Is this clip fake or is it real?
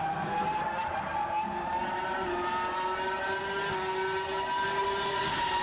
real